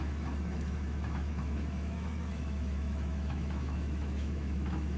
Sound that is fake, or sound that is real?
fake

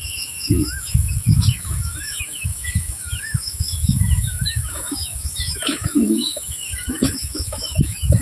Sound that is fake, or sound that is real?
fake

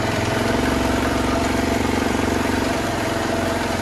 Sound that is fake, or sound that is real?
fake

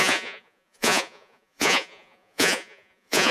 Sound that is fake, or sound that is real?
fake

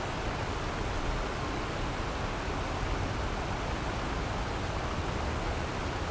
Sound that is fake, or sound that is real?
real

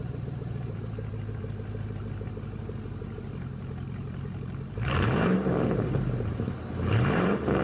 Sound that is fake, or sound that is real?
fake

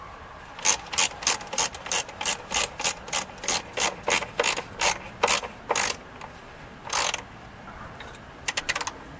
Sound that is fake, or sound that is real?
real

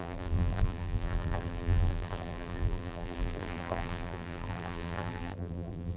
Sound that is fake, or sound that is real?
fake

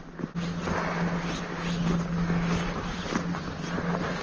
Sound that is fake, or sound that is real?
real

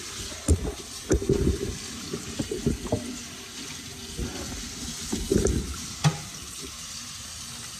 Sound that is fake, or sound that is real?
real